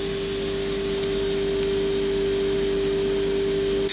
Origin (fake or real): real